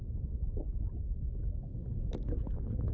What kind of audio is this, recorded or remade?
recorded